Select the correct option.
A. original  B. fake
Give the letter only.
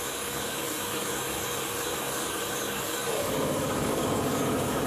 B